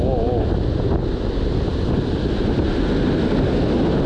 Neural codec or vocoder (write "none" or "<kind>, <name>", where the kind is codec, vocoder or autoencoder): none